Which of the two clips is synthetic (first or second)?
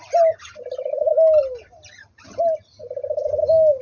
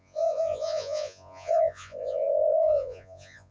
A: second